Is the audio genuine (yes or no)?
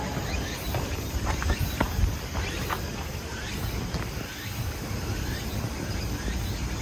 yes